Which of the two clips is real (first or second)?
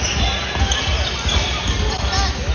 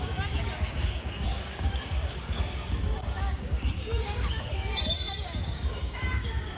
first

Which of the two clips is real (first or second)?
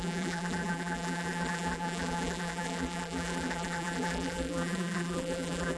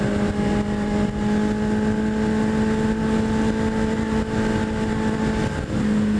second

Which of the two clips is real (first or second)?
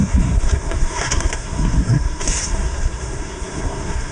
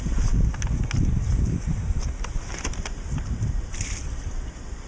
second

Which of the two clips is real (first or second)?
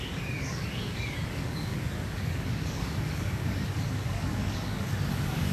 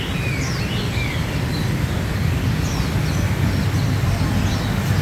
second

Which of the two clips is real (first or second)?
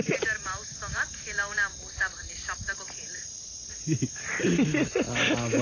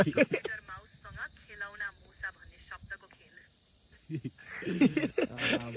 first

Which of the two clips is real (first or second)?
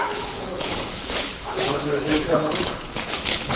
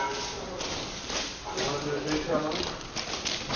second